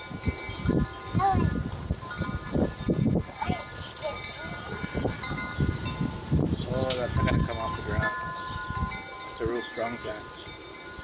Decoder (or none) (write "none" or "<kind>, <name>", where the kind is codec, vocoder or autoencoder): none